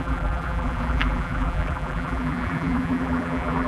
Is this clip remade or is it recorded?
remade